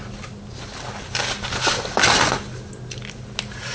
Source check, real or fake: real